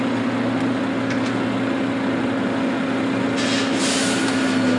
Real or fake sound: real